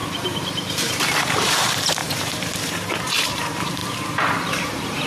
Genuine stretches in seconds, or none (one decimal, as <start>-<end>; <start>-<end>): 0.0-0.9; 3.8-4.6